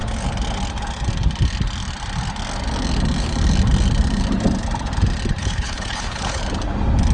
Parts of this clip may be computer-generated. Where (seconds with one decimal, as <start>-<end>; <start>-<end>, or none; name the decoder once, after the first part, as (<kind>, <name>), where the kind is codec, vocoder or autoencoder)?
5.4-6.4 (codec, HILCodec)